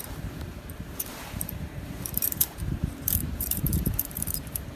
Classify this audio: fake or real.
fake